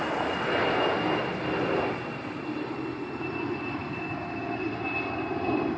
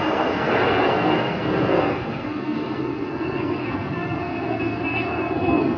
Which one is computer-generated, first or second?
second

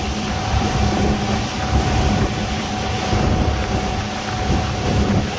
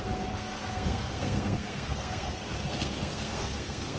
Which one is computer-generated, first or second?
second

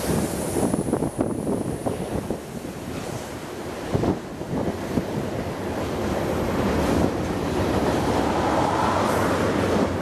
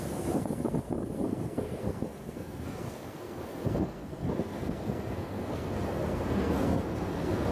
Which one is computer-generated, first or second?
second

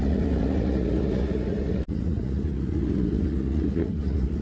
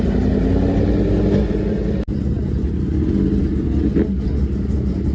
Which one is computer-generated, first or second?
first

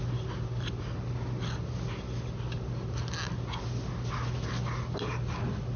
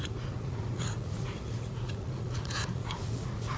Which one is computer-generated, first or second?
second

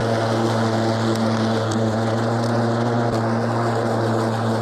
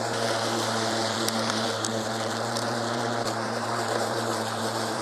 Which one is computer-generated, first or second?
second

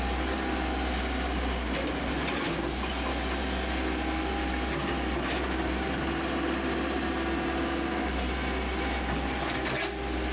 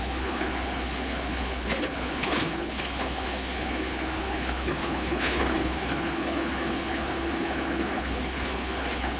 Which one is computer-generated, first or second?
second